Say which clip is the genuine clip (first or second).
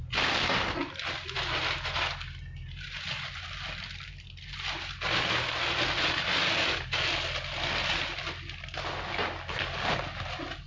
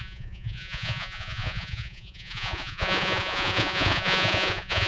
first